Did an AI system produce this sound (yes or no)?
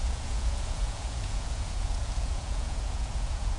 yes